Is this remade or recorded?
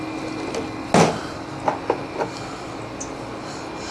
recorded